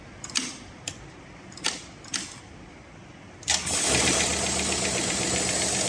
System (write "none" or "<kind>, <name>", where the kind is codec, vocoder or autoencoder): none